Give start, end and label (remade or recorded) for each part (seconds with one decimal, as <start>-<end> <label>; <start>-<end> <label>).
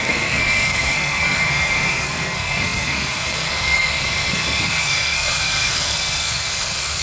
0.0-7.0 remade